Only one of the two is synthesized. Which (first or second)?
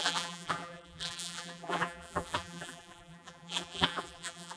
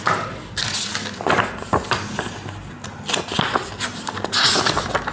first